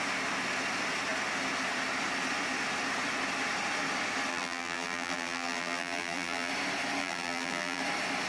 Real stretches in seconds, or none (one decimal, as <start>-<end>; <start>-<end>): 0.0-4.3; 6.5-7.0; 7.8-8.3